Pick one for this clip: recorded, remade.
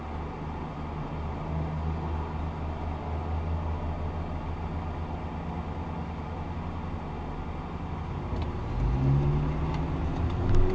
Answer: recorded